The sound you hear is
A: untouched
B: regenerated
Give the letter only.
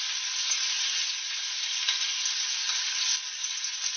A